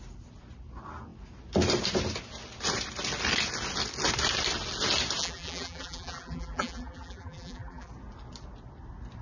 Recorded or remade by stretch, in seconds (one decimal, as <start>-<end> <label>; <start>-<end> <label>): 0.0-5.2 recorded; 5.2-7.9 remade; 7.9-9.2 recorded